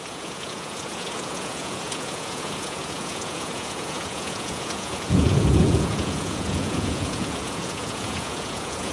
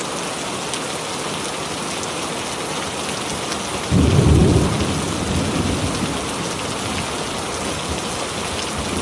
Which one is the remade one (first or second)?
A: first